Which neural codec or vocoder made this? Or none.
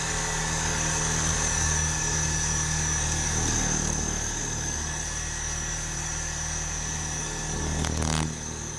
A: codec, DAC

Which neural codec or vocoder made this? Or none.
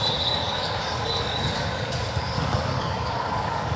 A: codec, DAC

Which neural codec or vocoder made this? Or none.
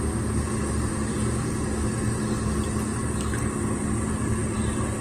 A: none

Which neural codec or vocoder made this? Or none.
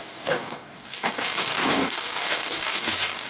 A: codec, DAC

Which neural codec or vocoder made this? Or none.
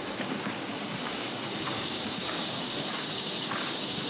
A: codec, DAC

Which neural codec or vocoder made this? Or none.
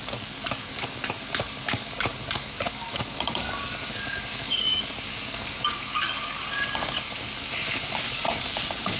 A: codec, DAC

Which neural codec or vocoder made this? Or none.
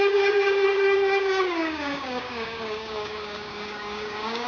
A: codec, DAC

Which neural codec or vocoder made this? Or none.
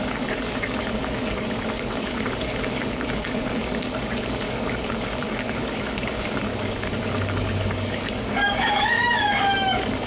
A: codec, DAC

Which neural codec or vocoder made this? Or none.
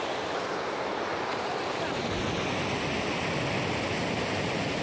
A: none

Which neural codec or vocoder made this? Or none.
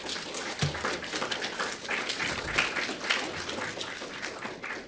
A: none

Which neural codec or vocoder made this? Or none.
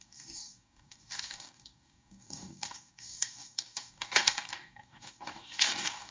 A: codec, DAC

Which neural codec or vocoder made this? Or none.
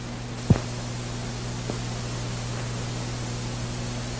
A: none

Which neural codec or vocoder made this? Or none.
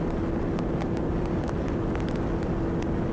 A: none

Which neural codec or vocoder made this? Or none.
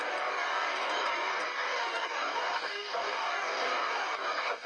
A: codec, DAC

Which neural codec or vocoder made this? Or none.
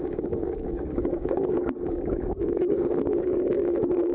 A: codec, DAC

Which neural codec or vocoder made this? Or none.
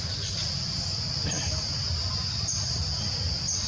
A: none